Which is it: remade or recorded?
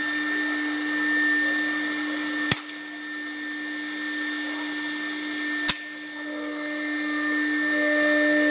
recorded